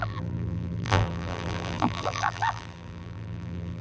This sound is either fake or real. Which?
fake